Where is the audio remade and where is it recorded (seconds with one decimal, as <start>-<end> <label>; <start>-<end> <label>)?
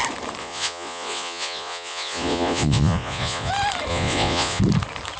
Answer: 0.0-0.4 recorded; 0.4-3.5 remade; 3.5-3.9 recorded; 3.9-4.6 remade; 4.6-5.2 recorded